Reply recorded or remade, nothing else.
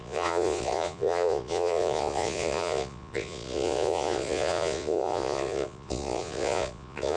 remade